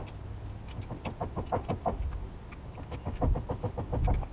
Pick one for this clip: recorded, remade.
recorded